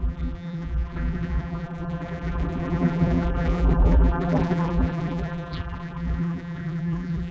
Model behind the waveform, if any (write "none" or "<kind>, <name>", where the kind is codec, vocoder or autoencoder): vocoder, BigVGAN v2